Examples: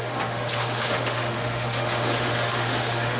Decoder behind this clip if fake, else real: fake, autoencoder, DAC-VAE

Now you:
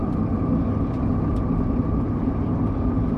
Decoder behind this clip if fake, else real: fake, vocoder, BigVGAN v2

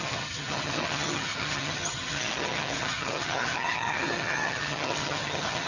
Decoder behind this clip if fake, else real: fake, vocoder, HiFi-GAN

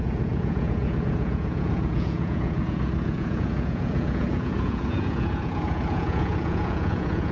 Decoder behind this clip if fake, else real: fake, vocoder, Vocos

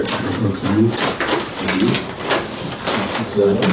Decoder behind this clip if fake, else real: real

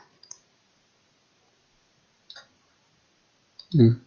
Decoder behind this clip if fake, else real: real